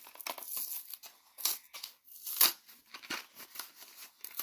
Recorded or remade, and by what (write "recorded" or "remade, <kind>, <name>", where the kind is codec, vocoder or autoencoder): recorded